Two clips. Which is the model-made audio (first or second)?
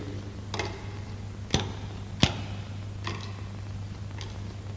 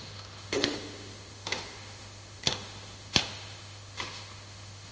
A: second